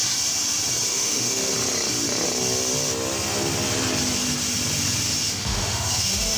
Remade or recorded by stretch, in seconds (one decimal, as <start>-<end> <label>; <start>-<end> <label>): 0.0-0.9 recorded; 0.9-1.5 remade; 1.5-5.3 recorded; 5.3-6.4 remade